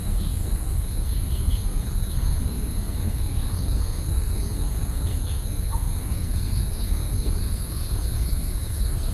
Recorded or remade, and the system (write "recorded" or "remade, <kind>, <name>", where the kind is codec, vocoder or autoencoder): remade, codec, SNAC